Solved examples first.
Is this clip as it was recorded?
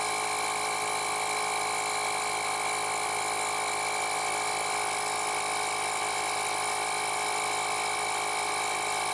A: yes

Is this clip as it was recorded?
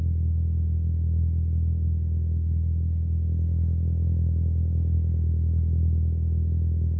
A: no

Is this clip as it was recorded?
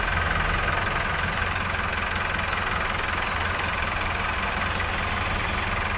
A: yes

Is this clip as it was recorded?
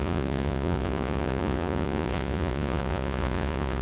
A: no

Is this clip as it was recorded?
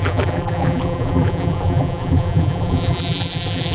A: no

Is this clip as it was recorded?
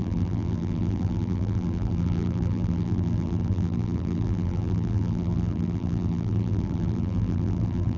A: no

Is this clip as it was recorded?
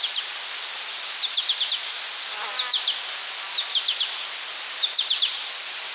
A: yes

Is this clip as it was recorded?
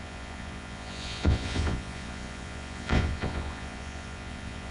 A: no